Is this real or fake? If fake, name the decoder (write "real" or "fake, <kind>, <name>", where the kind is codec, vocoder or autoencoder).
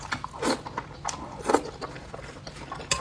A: real